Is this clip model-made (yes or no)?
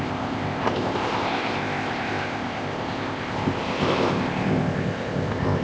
yes